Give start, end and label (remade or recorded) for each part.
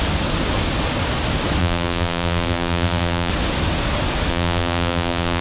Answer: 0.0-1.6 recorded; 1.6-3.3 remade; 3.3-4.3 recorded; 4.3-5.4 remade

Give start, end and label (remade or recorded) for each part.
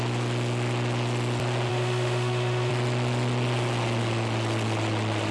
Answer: 0.0-1.7 recorded; 1.7-2.7 remade; 2.7-5.3 recorded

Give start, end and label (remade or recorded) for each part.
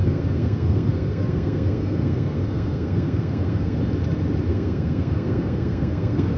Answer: 0.0-3.8 remade; 3.8-4.5 recorded; 4.5-6.4 remade